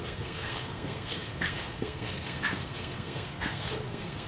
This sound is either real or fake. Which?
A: fake